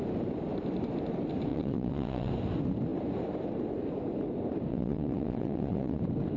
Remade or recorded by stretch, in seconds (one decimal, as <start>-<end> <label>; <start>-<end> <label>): 0.0-1.5 recorded; 1.5-2.3 remade; 2.3-4.7 recorded; 4.7-6.0 remade; 6.0-6.4 recorded